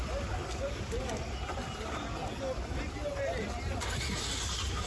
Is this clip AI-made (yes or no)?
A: no